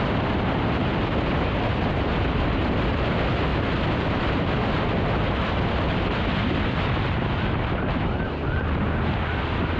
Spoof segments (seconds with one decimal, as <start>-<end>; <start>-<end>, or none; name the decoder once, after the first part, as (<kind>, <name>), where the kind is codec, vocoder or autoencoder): 1.5-2.1 (vocoder, BigVGAN v2)